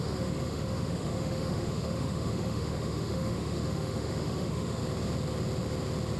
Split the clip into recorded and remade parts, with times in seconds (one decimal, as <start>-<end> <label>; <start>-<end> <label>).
0.0-4.8 remade; 4.8-6.2 recorded